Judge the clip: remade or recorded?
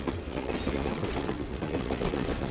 remade